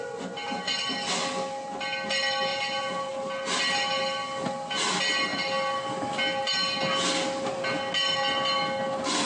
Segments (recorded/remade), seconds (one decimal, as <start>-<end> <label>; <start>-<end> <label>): 0.0-2.5 recorded; 2.5-3.1 remade; 3.1-9.3 recorded